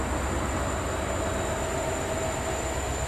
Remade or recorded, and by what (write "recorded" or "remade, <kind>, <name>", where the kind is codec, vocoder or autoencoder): recorded